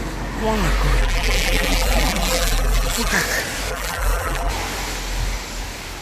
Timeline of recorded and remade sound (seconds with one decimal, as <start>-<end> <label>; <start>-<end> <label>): 0.0-1.0 recorded; 1.0-3.1 remade; 3.1-3.7 recorded; 3.7-4.5 remade; 4.5-6.0 recorded